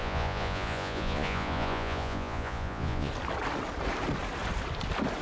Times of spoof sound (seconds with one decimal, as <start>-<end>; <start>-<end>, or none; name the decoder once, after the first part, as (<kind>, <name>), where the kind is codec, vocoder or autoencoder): 0.0-3.1 (vocoder, Vocos)